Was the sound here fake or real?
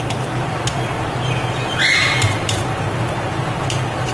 real